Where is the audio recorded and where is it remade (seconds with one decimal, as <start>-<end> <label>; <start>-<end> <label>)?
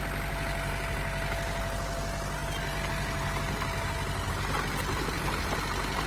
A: 0.0-6.1 recorded